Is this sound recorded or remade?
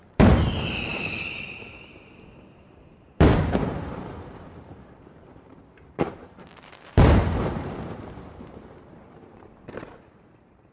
remade